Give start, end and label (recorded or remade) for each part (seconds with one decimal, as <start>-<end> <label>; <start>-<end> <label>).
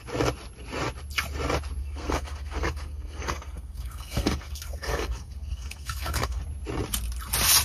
0.0-1.8 recorded; 1.8-6.4 remade; 6.4-7.6 recorded